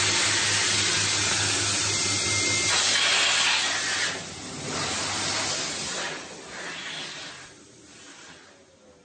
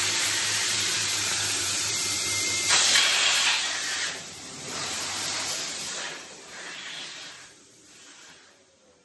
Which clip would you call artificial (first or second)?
second